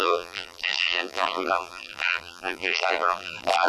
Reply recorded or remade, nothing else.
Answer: remade